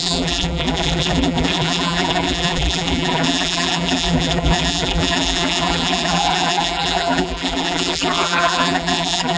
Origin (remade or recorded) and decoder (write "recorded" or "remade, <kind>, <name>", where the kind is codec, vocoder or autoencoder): remade, vocoder, BigVGAN v2